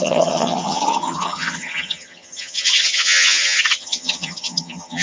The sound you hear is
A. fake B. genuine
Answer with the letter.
A